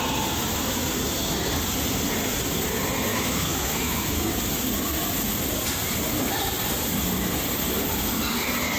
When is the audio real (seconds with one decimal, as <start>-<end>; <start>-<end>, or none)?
0.0-3.1; 4.3-8.8